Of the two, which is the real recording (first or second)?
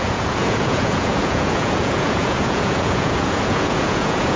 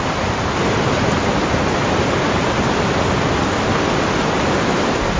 second